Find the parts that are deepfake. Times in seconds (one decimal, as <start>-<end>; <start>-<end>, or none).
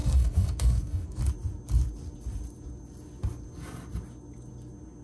0.0-1.2